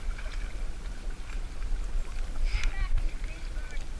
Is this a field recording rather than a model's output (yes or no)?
yes